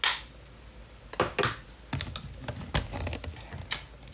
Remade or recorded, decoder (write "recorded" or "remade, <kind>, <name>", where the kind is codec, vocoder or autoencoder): recorded